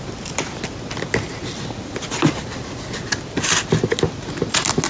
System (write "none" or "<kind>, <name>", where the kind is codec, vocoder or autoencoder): none